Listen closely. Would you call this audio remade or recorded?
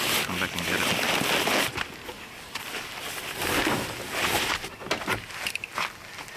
recorded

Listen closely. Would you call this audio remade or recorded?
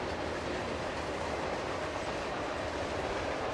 recorded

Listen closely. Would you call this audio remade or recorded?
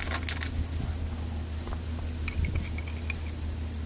recorded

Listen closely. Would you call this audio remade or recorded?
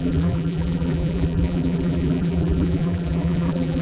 remade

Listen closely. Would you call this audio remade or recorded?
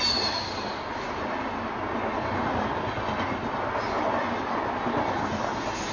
recorded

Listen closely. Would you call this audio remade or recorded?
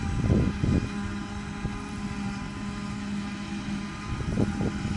recorded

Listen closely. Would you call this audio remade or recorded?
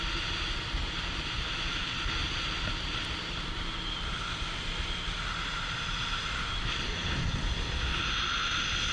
recorded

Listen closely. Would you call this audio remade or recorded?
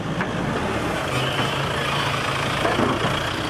recorded